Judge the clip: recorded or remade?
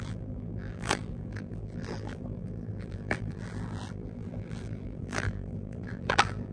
remade